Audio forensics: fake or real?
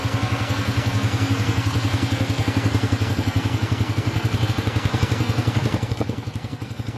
fake